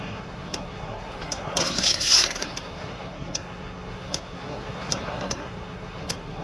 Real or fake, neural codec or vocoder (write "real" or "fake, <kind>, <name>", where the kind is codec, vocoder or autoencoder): fake, codec, SNAC